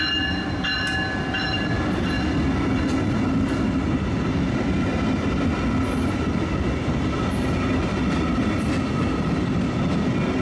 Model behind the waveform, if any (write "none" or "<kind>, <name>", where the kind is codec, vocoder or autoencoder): none